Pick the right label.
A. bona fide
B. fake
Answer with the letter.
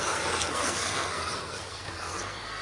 B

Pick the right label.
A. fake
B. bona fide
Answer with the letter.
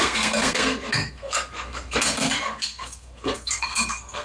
A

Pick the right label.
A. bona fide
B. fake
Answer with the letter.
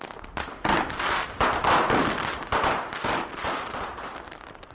A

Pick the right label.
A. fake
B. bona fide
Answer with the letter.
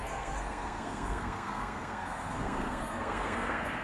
A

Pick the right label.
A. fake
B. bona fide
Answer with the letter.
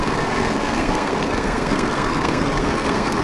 A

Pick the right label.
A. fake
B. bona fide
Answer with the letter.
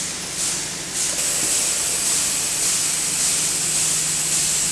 B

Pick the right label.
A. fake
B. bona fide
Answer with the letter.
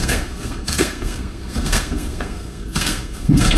A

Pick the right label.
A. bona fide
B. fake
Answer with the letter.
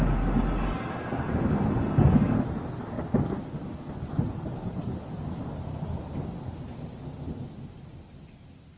A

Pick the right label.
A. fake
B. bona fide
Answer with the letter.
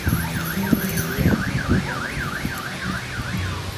B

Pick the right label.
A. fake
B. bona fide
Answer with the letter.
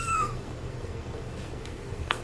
A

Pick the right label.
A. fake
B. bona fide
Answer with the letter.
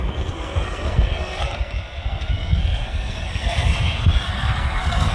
A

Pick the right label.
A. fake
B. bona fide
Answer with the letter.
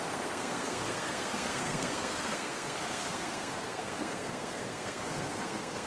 A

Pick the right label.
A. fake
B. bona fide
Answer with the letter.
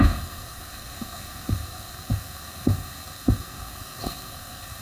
A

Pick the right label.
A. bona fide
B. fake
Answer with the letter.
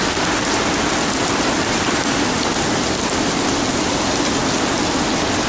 A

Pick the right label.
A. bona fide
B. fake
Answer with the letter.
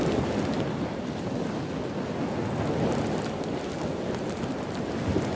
A